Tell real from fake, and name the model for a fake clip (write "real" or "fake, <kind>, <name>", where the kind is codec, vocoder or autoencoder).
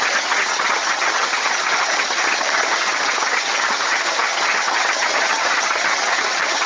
fake, vocoder, HiFi-GAN